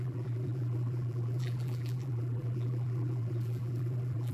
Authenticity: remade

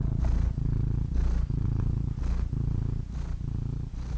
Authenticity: recorded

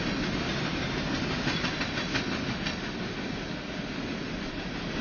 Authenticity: recorded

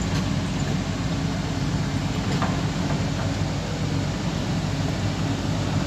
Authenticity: recorded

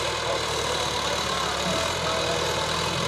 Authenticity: recorded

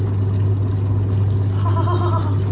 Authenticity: recorded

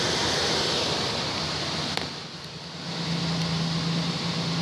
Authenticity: recorded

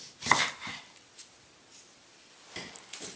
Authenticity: recorded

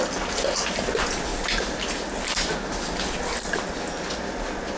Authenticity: recorded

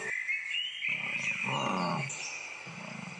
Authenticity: recorded